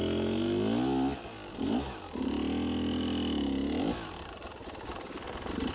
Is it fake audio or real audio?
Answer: real